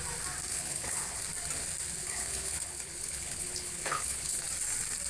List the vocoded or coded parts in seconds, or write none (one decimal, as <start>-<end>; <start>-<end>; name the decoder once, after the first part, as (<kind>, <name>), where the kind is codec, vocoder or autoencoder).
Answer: 0.5-1.2 (codec, HILCodec); 2.0-4.4